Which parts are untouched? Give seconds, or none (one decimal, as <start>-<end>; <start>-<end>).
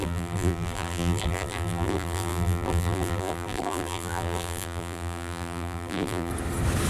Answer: 6.3-6.9